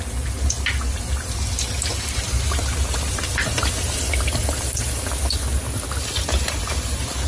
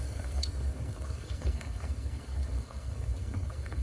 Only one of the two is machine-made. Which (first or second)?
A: second